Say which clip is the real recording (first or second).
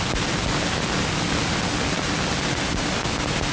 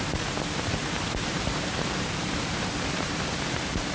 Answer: first